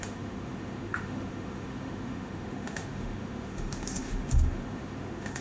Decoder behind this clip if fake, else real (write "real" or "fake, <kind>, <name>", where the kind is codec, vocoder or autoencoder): fake, autoencoder, DAC-VAE